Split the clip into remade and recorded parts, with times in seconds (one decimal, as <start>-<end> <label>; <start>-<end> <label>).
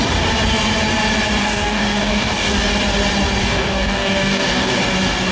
0.0-1.4 recorded; 1.4-2.6 remade; 2.6-3.4 recorded; 3.4-4.8 remade; 4.8-5.3 recorded